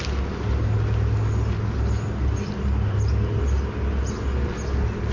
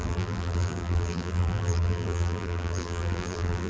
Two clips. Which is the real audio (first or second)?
first